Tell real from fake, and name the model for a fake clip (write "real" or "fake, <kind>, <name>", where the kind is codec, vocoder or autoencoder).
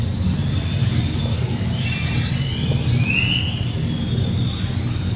real